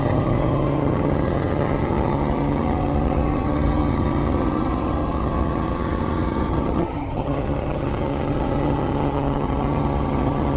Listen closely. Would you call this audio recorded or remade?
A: remade